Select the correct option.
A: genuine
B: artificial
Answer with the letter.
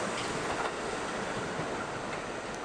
A